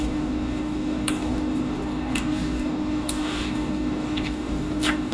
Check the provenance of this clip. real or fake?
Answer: fake